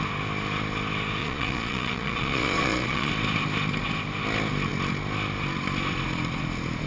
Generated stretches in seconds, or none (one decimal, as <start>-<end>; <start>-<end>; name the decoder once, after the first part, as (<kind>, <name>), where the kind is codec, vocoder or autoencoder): 1.2-3.1 (vocoder, Vocos)